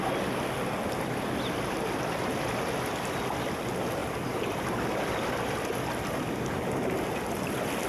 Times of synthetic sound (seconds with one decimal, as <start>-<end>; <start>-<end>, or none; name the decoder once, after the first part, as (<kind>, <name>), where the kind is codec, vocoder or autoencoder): none